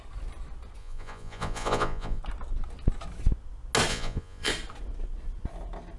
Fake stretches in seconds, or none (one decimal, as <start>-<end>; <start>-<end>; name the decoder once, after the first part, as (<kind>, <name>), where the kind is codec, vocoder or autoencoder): 0.8-2.2 (vocoder, Vocos); 3.9-4.5